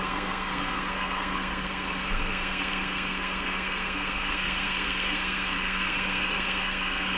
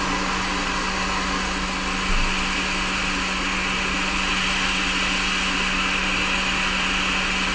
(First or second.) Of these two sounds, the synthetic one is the first